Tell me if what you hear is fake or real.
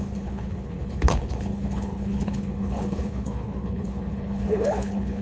fake